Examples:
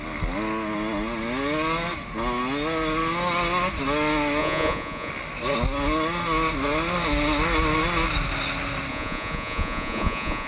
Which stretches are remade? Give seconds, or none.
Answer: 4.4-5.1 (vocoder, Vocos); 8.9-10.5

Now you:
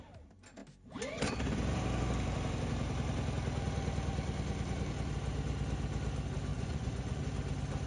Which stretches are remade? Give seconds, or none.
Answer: 6.5-7.2 (vocoder, Vocos)

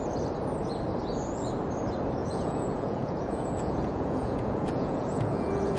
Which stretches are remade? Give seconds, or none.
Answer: 2.2-5.8 (vocoder, Vocos)

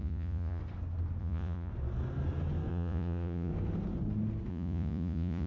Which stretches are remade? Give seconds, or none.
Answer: 0.0-0.6 (vocoder, Vocos); 1.2-1.7; 2.7-3.5; 4.5-5.5